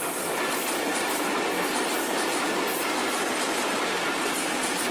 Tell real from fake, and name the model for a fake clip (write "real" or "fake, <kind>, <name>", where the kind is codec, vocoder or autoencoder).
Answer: real